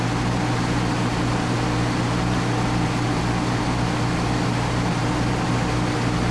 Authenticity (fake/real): real